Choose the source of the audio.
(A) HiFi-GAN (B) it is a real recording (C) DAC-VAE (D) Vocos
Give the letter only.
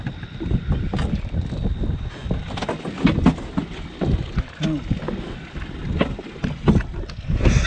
B